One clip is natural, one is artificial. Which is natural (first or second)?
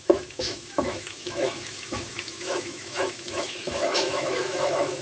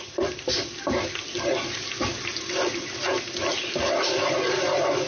second